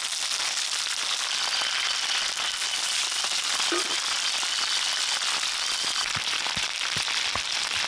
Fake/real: real